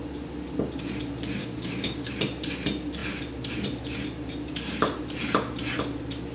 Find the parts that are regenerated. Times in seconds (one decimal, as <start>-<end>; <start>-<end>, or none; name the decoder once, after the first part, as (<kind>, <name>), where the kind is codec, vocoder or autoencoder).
1.4-2.1 (codec, DAC)